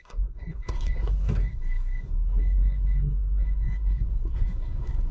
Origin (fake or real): fake